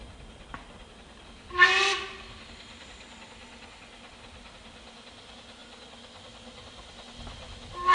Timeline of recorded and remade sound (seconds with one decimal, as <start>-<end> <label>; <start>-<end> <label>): 0.0-7.9 recorded

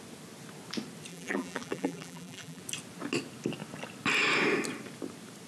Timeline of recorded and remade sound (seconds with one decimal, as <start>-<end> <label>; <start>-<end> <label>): 0.0-1.1 recorded; 1.1-2.6 remade; 2.6-5.5 recorded

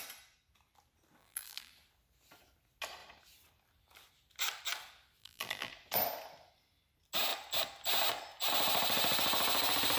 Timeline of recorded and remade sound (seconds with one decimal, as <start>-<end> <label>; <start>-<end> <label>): 0.0-1.2 recorded; 1.2-1.7 remade; 1.7-5.2 recorded; 5.2-5.7 remade; 5.7-10.0 recorded

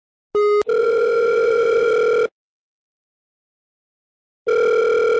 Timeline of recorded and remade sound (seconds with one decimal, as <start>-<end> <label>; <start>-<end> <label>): 0.0-0.8 recorded; 0.8-1.9 remade; 1.9-5.2 recorded